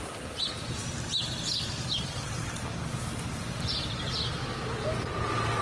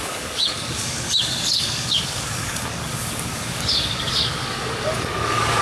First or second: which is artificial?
second